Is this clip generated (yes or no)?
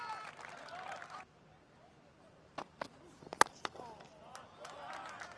no